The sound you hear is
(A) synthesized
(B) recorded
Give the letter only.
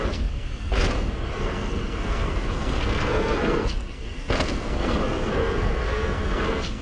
A